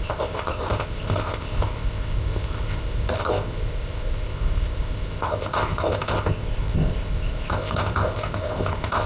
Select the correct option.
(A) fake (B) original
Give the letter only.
A